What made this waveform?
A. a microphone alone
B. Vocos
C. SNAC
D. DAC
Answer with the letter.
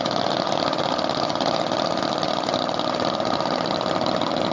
A